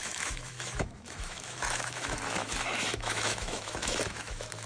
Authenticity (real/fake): fake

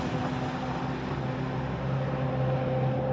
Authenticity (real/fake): real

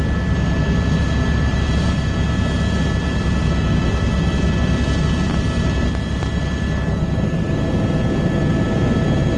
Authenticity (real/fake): real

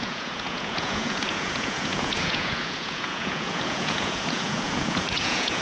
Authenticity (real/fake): fake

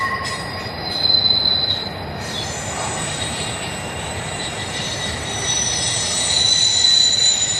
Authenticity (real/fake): fake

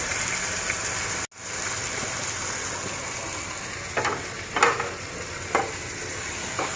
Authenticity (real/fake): real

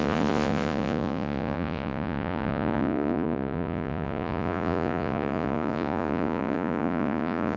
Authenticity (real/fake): fake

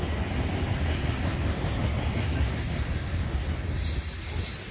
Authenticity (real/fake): real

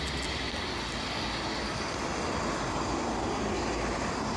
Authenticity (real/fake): real